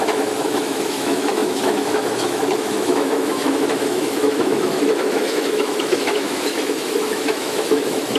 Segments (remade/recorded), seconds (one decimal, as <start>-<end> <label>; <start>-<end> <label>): 0.0-8.2 remade